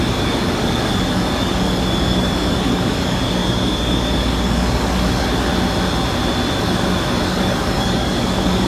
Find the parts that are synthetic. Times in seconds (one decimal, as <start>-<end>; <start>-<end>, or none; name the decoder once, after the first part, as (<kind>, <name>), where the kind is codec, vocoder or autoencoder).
0.0-5.5 (codec, DAC); 6.6-8.7